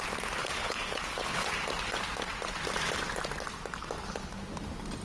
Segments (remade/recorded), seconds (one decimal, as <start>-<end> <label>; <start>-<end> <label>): 0.0-0.4 recorded; 0.4-1.5 remade; 1.5-5.0 recorded